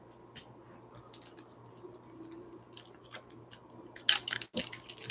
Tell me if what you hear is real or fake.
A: real